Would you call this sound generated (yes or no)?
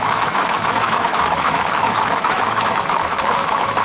yes